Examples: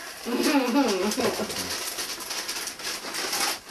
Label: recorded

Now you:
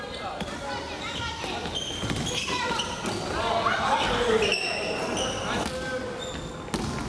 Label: recorded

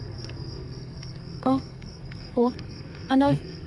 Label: remade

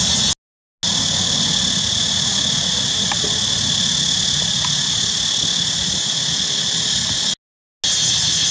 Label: recorded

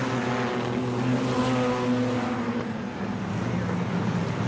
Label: recorded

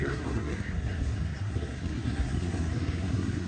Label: remade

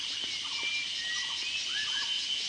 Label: recorded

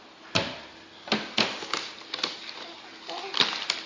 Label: recorded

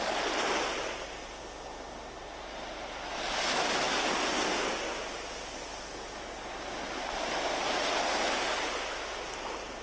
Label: recorded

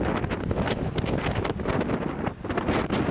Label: recorded